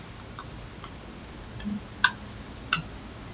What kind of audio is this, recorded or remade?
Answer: recorded